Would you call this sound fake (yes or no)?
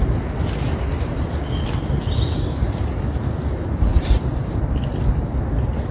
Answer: no